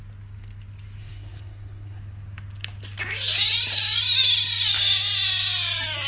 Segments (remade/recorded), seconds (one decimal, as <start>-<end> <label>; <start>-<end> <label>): 0.0-1.0 recorded; 1.0-2.0 remade; 2.0-6.1 recorded